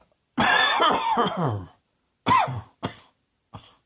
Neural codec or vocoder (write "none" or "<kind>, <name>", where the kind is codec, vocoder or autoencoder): none